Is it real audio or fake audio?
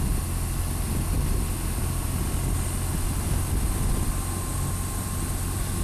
real